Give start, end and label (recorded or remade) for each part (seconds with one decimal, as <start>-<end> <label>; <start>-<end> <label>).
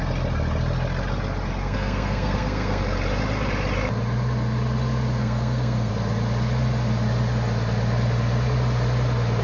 0.0-1.6 recorded; 1.6-2.8 remade; 2.8-5.2 recorded; 5.2-5.9 remade; 5.9-9.4 recorded